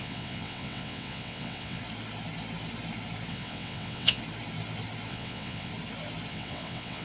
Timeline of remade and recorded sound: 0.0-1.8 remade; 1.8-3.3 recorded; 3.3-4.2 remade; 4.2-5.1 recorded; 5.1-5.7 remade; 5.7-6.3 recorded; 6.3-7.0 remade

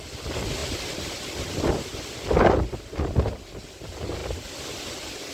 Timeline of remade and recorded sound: 0.0-5.3 recorded

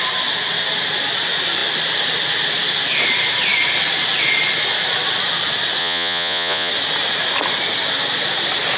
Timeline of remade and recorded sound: 0.0-5.8 recorded; 5.8-6.7 remade; 6.7-8.8 recorded